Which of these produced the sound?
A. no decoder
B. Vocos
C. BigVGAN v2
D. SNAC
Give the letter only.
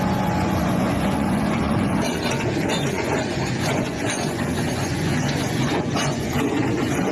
B